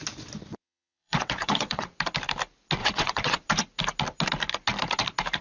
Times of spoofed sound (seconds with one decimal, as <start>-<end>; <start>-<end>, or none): 0.5-2.0; 2.8-3.5